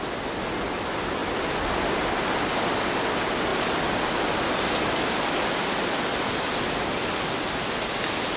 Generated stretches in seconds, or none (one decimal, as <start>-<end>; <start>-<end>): none